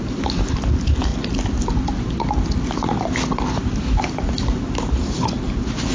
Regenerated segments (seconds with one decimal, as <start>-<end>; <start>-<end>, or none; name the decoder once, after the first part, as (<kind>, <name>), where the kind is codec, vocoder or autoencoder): none